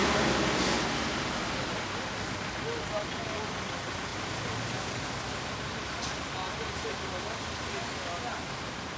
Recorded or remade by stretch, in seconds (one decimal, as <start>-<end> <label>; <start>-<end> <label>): 0.0-9.0 recorded